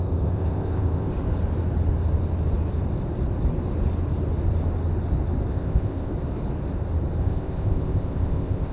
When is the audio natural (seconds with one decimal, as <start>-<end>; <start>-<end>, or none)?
1.1-5.5; 6.1-7.2

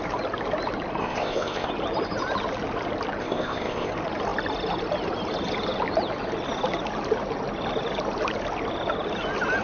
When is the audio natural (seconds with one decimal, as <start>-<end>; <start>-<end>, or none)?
0.0-1.0; 1.7-3.2; 3.9-9.6

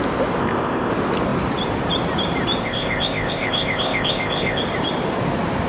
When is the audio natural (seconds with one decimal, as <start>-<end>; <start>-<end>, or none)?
0.0-0.4; 0.9-2.6; 4.6-5.7

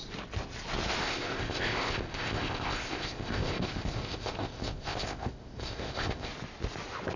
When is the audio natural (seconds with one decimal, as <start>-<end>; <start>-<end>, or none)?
0.0-1.0; 6.3-7.2